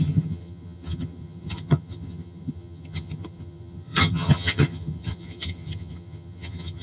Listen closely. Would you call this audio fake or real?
fake